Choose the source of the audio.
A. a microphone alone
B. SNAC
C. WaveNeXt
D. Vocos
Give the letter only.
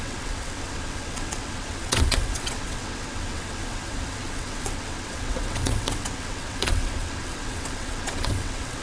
C